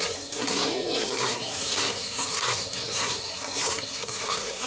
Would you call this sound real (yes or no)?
no